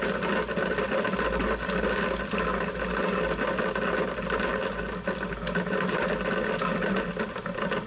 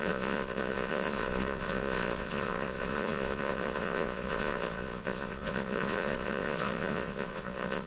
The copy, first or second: second